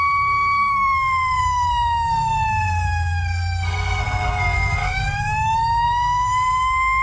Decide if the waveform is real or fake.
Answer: fake